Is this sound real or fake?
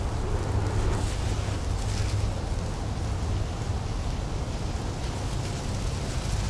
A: real